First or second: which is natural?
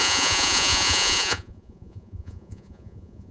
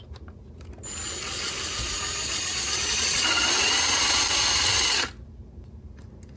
second